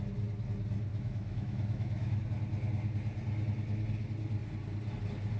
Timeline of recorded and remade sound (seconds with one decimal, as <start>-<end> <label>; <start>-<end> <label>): 0.0-0.9 recorded; 0.9-2.2 remade; 2.2-5.4 recorded